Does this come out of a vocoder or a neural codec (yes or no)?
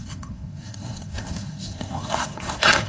yes